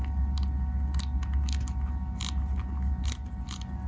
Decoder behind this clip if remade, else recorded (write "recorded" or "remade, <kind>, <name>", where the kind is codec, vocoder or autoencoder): recorded